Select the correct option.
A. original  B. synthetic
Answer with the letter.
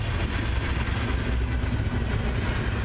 A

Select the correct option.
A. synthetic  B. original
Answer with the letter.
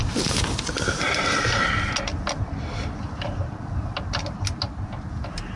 B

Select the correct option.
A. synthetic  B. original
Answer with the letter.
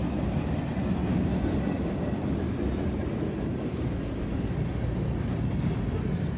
B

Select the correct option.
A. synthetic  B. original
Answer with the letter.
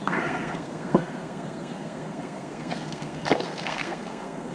A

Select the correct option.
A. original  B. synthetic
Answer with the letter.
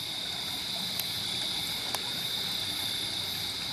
A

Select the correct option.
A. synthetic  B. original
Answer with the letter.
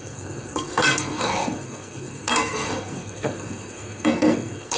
A